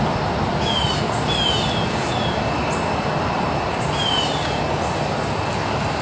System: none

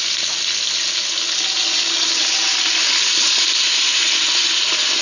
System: none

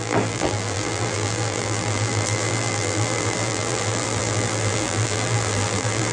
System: vocoder, BigVGAN v2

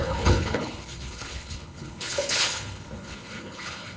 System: codec, HILCodec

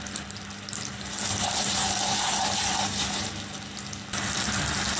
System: none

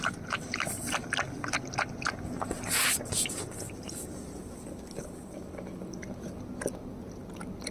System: vocoder, BigVGAN v2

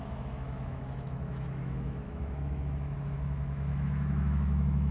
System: autoencoder, DAC-VAE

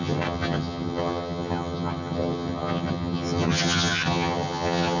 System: vocoder, HiFi-GAN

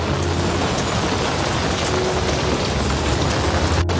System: none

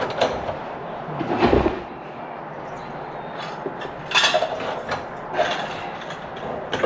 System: none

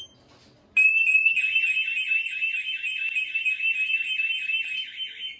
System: none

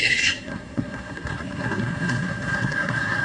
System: codec, SNAC